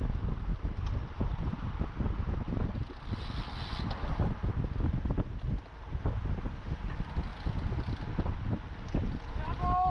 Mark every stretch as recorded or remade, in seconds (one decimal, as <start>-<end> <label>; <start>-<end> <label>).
0.0-9.9 recorded